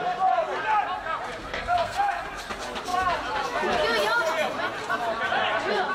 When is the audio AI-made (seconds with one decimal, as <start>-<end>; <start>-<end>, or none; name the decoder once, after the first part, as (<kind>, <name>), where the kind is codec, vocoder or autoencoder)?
1.4-2.2 (codec, SNAC)